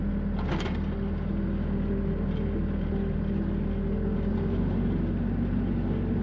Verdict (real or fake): real